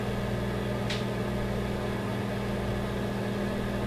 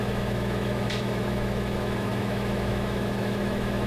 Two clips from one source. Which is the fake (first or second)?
second